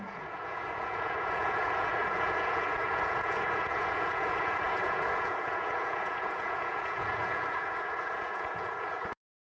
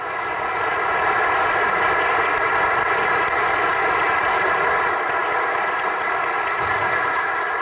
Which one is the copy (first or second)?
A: first